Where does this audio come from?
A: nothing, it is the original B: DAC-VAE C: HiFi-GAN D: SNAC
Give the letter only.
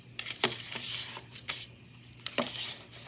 A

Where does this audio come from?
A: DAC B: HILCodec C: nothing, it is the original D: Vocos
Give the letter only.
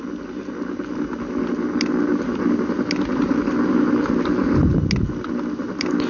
C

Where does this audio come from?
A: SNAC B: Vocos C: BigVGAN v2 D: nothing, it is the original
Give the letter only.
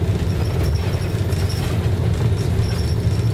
D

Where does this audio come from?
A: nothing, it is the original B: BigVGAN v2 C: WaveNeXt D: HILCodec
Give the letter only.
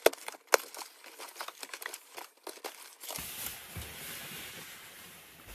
A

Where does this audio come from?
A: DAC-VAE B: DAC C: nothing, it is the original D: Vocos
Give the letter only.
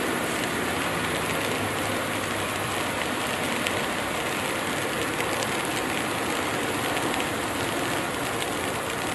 C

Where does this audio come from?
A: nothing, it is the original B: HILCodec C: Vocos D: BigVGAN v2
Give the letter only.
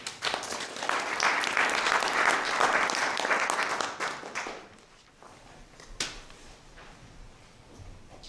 D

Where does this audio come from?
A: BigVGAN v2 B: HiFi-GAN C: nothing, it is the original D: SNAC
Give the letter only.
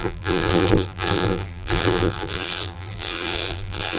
A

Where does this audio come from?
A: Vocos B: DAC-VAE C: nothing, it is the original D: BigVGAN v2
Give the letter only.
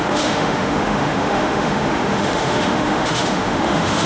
B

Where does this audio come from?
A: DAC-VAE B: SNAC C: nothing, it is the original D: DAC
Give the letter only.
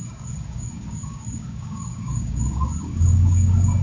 D